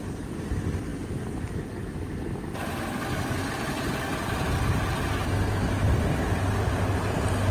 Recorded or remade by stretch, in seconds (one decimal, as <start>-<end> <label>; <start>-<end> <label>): 0.0-4.1 recorded; 4.1-4.8 remade; 4.8-7.5 recorded